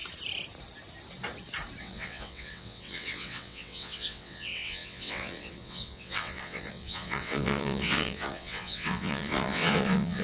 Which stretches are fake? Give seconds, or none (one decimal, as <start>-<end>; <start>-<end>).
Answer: 1.8-10.2